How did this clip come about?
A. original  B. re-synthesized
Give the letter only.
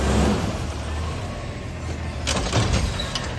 A